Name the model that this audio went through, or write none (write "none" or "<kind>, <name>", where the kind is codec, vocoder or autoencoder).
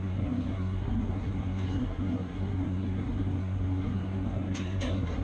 codec, SNAC